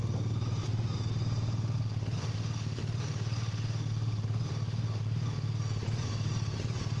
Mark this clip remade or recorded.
recorded